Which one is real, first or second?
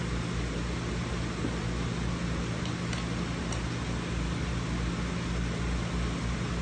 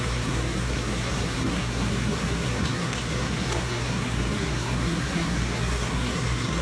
first